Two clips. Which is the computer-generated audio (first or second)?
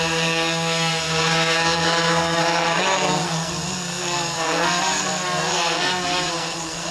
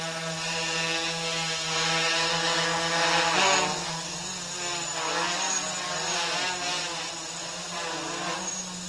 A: first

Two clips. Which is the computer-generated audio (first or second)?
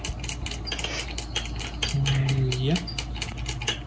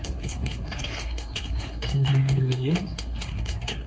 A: second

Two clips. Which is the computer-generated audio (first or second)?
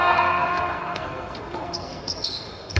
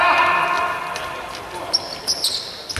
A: first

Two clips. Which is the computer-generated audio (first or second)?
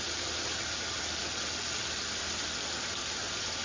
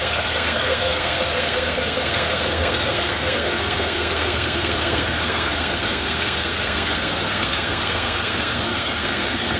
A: second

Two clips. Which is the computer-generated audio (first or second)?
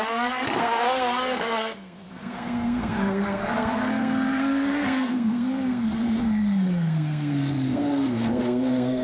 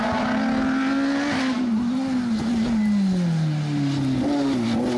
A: first